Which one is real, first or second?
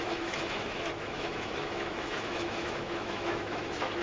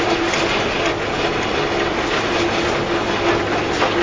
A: second